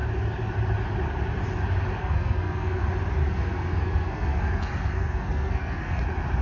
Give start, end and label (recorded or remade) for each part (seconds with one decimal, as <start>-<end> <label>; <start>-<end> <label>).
0.0-2.0 recorded; 2.0-2.8 remade; 2.8-3.2 recorded; 3.2-6.0 remade; 6.0-6.4 recorded